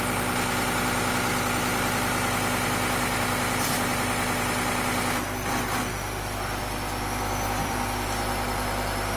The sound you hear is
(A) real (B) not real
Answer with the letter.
B